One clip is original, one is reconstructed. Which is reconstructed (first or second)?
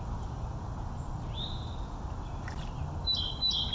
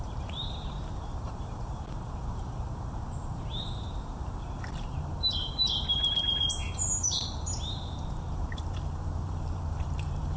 second